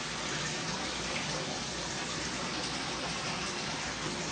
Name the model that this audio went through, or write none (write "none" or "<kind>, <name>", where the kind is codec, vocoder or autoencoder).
none